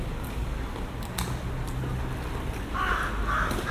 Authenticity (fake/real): real